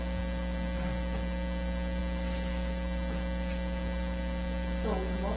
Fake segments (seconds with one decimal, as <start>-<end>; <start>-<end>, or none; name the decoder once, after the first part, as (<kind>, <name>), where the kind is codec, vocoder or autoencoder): none